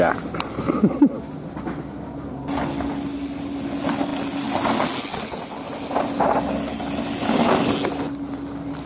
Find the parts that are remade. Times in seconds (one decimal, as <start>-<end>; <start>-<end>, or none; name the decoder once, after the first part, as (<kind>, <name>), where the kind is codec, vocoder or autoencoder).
none